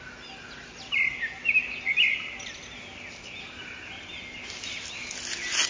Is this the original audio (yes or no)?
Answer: yes